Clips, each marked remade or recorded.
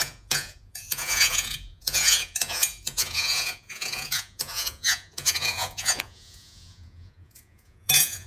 remade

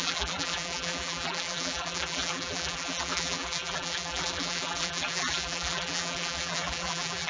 remade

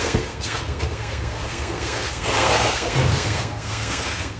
remade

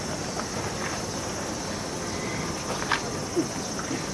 recorded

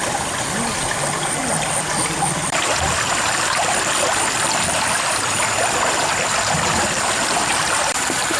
remade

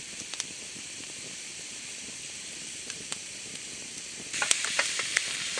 remade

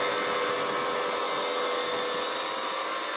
recorded